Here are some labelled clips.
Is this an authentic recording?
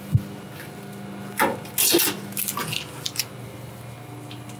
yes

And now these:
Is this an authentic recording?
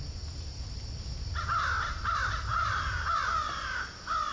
yes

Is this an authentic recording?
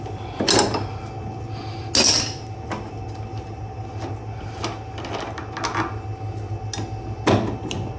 yes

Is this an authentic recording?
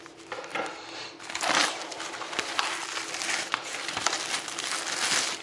yes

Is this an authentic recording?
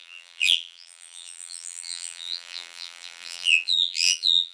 no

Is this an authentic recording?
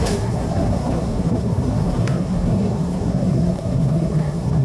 no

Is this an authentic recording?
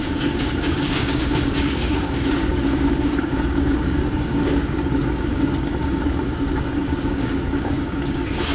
no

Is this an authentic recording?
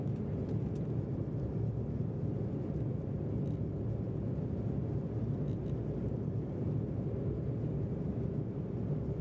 yes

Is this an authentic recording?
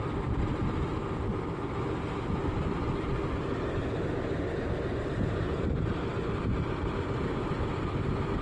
yes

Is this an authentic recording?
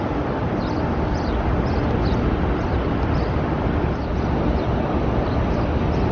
yes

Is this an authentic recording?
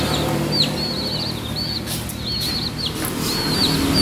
yes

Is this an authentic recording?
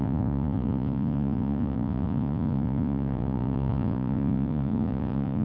no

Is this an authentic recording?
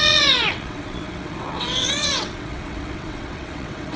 no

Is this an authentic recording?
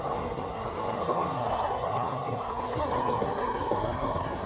no